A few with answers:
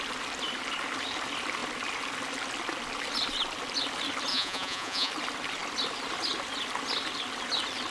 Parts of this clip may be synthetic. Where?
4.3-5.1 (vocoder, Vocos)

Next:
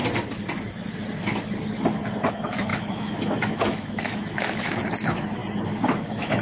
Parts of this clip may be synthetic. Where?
2.3-5.4 (autoencoder, DAC-VAE); 6.0-6.4

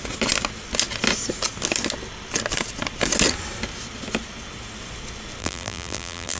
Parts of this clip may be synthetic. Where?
5.4-6.4 (vocoder, BigVGAN v2)

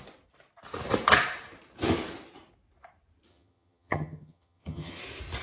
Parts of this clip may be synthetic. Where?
3.3-5.0 (vocoder, HiFi-GAN)

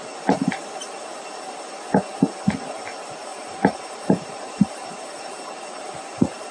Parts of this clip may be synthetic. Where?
3.3-6.5 (vocoder, BigVGAN v2)

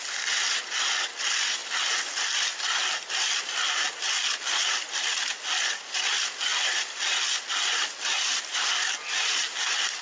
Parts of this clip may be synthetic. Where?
1.6-6.0 (vocoder, BigVGAN v2); 6.5-7.8

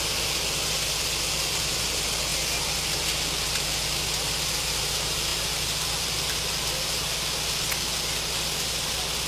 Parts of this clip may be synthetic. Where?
none